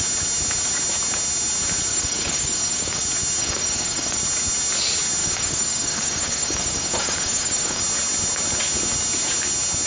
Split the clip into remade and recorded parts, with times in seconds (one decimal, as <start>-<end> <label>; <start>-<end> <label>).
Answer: 0.0-1.9 recorded; 1.9-3.0 remade; 3.0-3.4 recorded; 3.4-4.2 remade; 4.2-5.2 recorded; 5.2-7.8 remade; 7.8-9.9 recorded

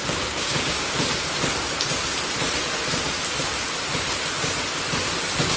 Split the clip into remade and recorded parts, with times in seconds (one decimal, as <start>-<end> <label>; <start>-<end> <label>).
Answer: 0.0-0.9 remade; 0.9-5.6 recorded

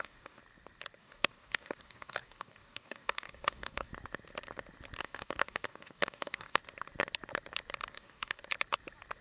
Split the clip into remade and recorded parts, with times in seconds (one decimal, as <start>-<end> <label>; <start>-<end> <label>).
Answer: 0.0-0.4 remade; 0.4-1.0 recorded; 1.0-3.9 remade; 3.9-5.0 recorded; 5.0-6.6 remade; 6.6-7.9 recorded; 7.9-8.4 remade; 8.4-9.2 recorded

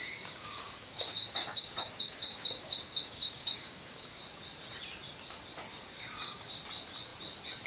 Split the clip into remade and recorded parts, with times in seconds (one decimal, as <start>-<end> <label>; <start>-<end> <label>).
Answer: 0.0-4.2 remade; 4.2-5.7 recorded; 5.7-6.5 remade; 6.5-7.7 recorded